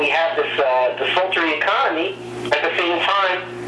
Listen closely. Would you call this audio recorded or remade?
recorded